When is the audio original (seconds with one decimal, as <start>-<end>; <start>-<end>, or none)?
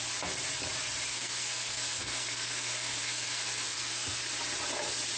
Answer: 0.0-1.1; 4.2-5.2